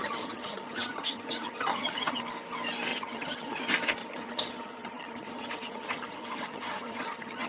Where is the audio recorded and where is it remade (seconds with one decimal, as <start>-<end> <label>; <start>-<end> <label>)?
0.0-2.2 remade; 2.2-2.9 recorded; 2.9-3.6 remade; 3.6-4.0 recorded; 4.0-7.5 remade